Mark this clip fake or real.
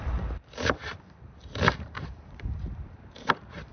fake